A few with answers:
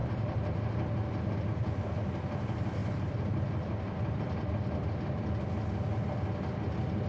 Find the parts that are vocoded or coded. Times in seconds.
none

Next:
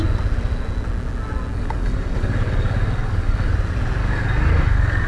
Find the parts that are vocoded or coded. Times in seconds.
1.5-3.5 (codec, DAC); 4.0-5.1

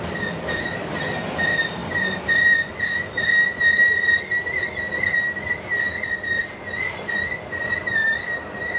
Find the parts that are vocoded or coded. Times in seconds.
none

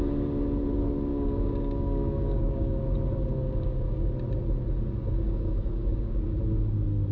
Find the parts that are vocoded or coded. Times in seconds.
1.1-2.8 (codec, DAC); 3.3-4.1; 5.1-6.4

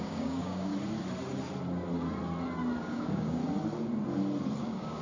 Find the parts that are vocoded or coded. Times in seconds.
0.0-0.7 (codec, DAC); 2.8-3.4; 4.6-5.0

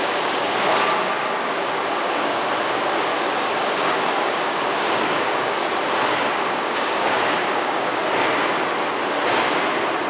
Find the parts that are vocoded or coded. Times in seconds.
0.0-3.1 (codec, DAC); 4.1-5.6; 6.4-8.0